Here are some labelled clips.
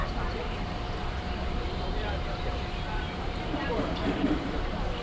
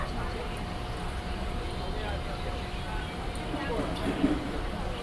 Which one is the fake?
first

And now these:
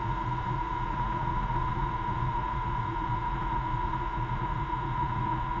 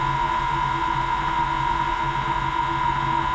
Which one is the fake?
first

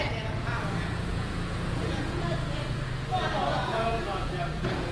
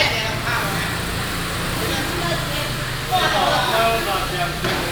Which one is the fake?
first